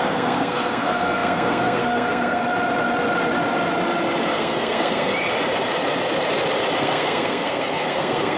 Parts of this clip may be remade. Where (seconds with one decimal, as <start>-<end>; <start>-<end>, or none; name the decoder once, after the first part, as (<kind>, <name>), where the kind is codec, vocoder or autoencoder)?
0.0-2.4 (codec, SNAC); 4.3-5.1; 6.8-8.4